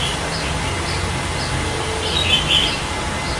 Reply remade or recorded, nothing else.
recorded